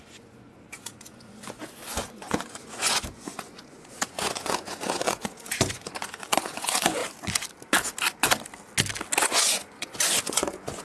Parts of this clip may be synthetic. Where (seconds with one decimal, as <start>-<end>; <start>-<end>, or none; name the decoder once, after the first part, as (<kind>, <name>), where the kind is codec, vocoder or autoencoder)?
0.0-7.0 (vocoder, Vocos); 9.2-10.8